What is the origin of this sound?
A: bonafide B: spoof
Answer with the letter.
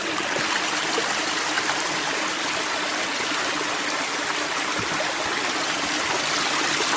A